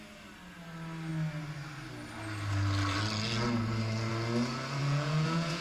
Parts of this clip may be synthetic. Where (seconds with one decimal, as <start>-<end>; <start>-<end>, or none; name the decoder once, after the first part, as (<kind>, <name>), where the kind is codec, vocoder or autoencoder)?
4.8-5.6 (vocoder, Vocos)